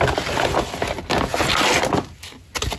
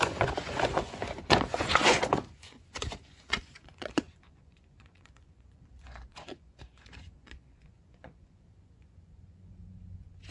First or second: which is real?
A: first